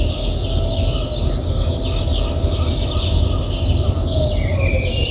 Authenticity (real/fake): real